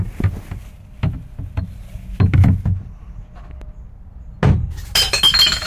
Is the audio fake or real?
real